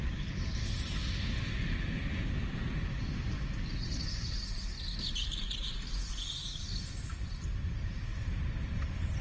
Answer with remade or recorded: recorded